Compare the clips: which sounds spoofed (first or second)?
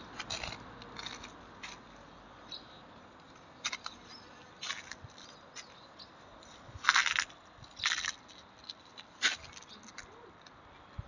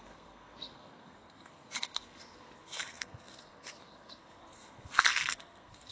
second